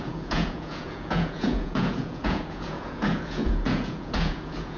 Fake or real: fake